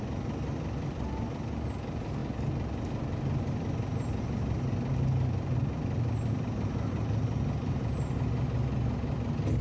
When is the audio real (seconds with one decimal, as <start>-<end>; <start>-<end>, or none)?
0.0-9.6

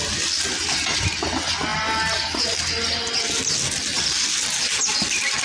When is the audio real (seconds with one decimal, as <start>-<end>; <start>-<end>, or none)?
0.0-5.4

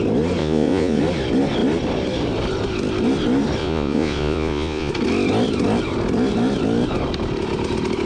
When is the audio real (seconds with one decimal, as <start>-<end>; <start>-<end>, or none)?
0.0-0.4; 1.0-3.6; 4.9-8.1

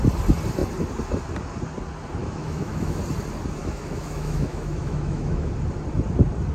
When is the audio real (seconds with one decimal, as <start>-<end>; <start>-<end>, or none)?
0.0-2.2; 3.0-3.6; 5.5-6.5

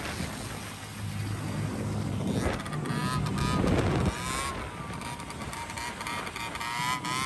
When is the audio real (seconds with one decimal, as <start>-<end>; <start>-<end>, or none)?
0.0-7.3

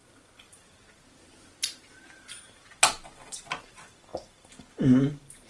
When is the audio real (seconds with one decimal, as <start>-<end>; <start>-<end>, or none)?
2.8-5.5